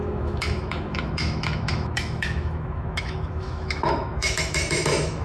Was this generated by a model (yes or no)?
yes